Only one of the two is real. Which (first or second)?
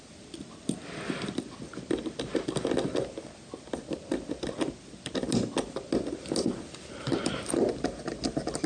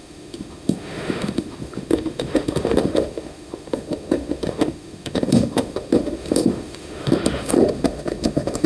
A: first